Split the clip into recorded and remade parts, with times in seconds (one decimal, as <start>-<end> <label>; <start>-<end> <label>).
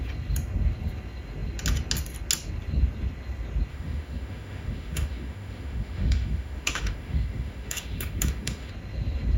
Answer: 0.0-3.7 recorded; 3.7-8.7 remade; 8.7-9.4 recorded